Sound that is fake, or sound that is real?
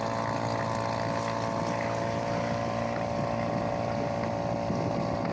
real